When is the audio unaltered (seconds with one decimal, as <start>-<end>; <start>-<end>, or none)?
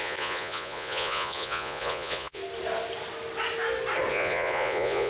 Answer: 2.4-4.1